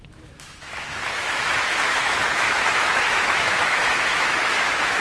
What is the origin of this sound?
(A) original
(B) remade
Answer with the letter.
B